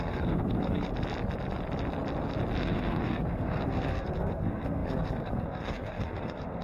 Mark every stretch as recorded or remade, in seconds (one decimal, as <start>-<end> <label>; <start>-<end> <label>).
0.0-0.9 remade; 0.9-2.6 recorded; 2.6-6.6 remade